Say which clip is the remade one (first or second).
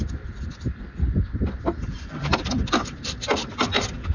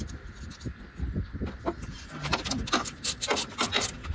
first